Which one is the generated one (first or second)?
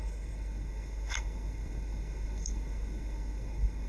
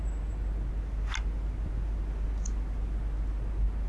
first